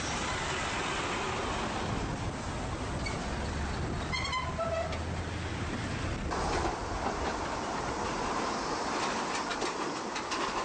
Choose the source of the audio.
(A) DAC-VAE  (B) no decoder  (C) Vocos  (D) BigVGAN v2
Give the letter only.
B